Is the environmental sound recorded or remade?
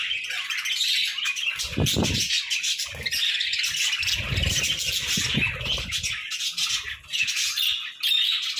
recorded